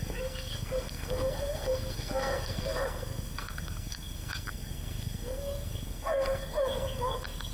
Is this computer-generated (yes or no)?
yes